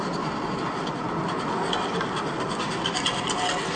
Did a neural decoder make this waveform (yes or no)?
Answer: no